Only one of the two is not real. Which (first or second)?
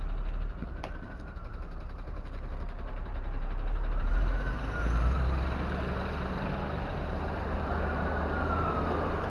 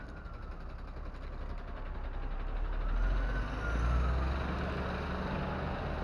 first